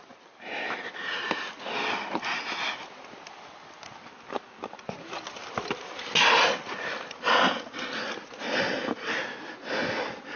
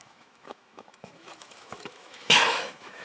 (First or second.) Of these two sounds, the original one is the first